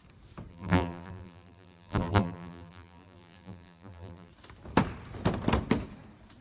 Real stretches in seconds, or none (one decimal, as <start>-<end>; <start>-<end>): 0.0-0.5; 4.3-6.4